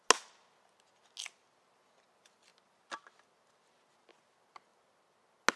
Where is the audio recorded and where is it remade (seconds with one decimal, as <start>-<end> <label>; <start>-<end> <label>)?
0.0-5.6 recorded